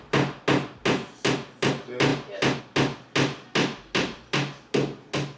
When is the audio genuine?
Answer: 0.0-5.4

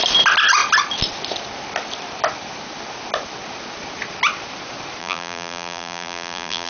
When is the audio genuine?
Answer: 0.0-5.0